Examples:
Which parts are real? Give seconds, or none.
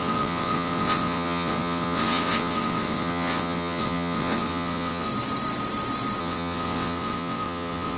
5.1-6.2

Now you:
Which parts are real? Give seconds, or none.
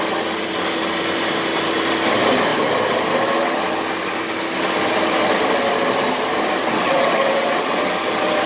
0.0-6.6; 7.9-8.5